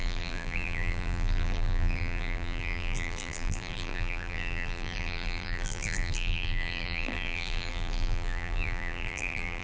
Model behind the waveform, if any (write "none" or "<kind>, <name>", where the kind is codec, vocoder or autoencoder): vocoder, BigVGAN v2